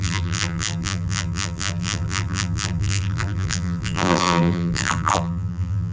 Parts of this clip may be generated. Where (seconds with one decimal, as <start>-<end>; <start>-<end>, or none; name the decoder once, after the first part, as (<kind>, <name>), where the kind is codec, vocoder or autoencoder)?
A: 0.0-5.9 (vocoder, BigVGAN v2)